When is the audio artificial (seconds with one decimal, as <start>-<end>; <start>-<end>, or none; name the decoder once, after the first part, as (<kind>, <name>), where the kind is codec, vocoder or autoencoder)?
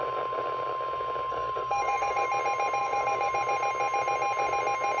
1.3-2.3 (codec, DAC); 2.8-3.3